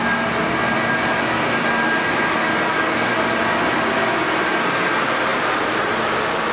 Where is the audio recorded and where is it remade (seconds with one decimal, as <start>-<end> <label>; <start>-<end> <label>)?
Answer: 0.0-6.5 recorded

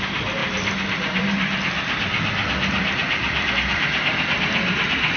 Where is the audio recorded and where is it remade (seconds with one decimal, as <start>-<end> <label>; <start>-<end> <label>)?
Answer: 0.0-5.2 remade

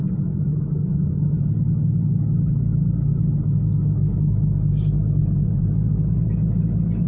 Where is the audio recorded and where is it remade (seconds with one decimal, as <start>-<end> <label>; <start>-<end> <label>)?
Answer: 0.0-5.2 recorded; 5.2-6.6 remade; 6.6-7.1 recorded

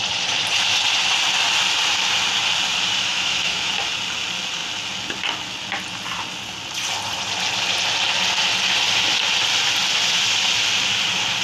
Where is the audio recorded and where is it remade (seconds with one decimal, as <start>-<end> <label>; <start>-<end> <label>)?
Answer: 0.0-3.1 recorded; 3.1-3.7 remade; 3.7-11.4 recorded

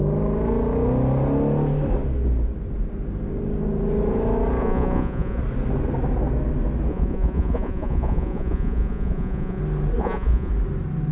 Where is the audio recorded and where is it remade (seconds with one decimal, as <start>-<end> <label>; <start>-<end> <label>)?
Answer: 0.0-4.6 recorded; 4.6-5.4 remade; 5.4-6.9 recorded; 6.9-9.6 remade; 9.6-10.0 recorded; 10.0-10.5 remade; 10.5-11.1 recorded

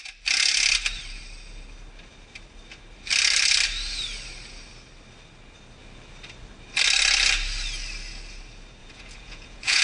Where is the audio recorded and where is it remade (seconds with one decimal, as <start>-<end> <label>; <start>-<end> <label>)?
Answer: 0.0-8.8 recorded; 8.8-9.8 remade

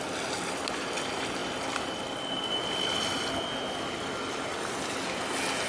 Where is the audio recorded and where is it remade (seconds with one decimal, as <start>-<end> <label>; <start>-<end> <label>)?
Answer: 0.0-5.7 recorded

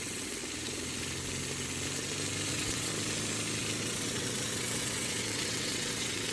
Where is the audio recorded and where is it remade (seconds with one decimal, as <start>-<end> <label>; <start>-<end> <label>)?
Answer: 0.0-0.4 remade; 0.4-2.5 recorded; 2.5-2.9 remade; 2.9-3.8 recorded; 3.8-6.3 remade